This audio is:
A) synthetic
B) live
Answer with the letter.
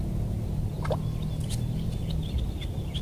B